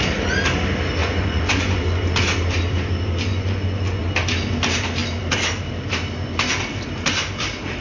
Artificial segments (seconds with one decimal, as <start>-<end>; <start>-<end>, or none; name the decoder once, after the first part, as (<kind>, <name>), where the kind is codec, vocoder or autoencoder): 1.0-1.8 (vocoder, Vocos); 3.3-4.0